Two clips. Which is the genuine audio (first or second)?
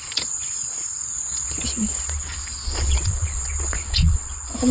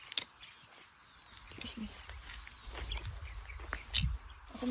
second